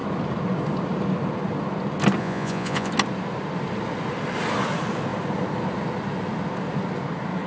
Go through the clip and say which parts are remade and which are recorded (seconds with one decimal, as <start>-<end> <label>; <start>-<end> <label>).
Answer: 0.0-2.2 recorded; 2.2-2.9 remade; 2.9-7.5 recorded